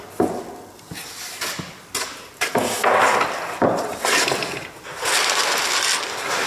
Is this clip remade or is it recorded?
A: recorded